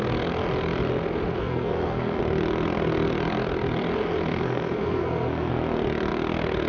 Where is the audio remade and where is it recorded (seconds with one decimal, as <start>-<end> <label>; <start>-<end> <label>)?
0.0-1.4 recorded; 1.4-2.2 remade; 2.2-4.3 recorded; 4.3-5.5 remade; 5.5-6.7 recorded